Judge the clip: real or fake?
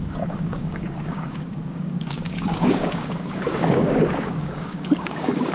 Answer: fake